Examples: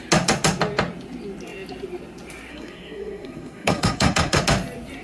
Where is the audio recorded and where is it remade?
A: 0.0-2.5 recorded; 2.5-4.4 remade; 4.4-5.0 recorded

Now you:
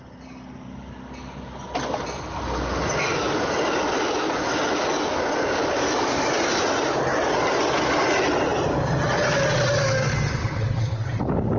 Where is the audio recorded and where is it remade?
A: 0.0-10.4 recorded; 10.4-11.2 remade; 11.2-11.6 recorded

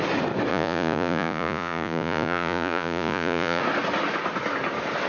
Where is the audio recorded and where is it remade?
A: 0.0-0.5 recorded; 0.5-3.6 remade; 3.6-5.1 recorded

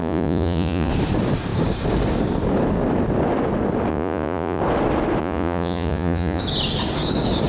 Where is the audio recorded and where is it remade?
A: 0.0-0.9 remade; 0.9-3.9 recorded; 3.9-4.6 remade; 4.6-5.2 recorded; 5.2-6.4 remade; 6.4-7.5 recorded

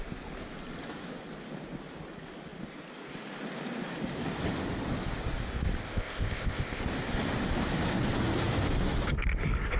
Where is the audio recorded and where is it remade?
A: 0.0-5.8 recorded; 5.8-6.8 remade; 6.8-9.8 recorded